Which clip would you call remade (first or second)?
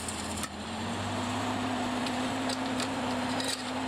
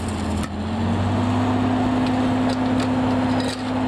first